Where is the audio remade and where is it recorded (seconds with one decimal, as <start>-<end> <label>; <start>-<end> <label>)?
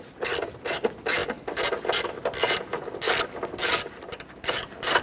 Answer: 0.0-5.0 recorded